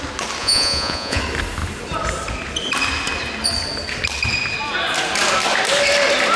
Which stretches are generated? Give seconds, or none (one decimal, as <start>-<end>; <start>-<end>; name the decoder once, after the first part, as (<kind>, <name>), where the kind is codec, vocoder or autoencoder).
0.4-1.2 (vocoder, Vocos)